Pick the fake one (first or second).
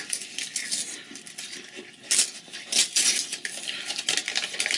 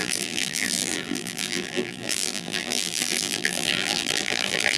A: second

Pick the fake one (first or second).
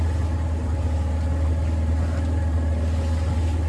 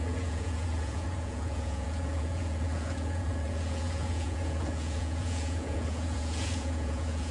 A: second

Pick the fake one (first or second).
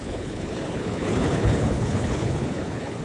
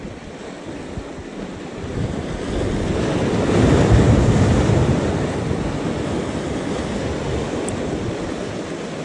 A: first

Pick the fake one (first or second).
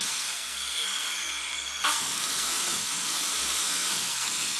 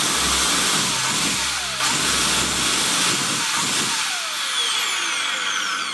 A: first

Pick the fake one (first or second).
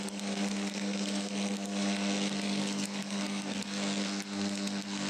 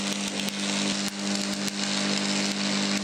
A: first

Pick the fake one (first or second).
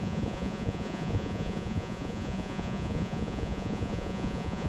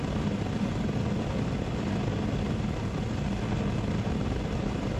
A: first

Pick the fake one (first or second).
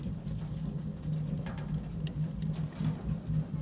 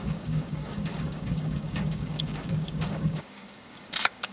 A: second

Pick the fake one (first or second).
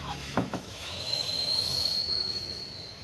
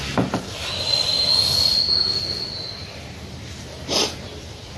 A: first